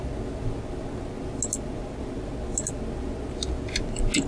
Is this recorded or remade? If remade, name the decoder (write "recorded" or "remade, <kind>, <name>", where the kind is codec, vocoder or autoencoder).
recorded